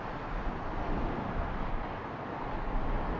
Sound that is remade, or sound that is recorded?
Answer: recorded